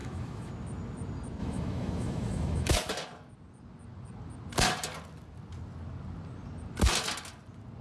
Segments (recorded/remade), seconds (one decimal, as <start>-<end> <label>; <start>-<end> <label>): 0.0-0.5 remade; 0.5-1.4 recorded; 1.4-2.7 remade; 2.7-7.8 recorded